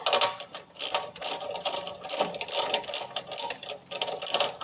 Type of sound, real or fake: real